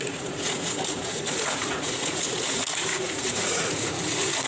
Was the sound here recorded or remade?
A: remade